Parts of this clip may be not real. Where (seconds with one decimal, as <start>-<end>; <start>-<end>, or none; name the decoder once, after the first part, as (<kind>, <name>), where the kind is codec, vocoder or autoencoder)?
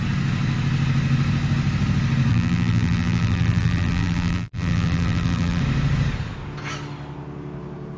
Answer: 2.3-5.6 (vocoder, BigVGAN v2)